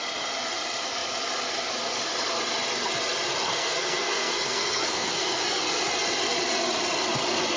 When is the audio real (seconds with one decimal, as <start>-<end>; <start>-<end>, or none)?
0.0-3.5; 5.6-7.6